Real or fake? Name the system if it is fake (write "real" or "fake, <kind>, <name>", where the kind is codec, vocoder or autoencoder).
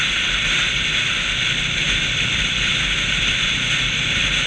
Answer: real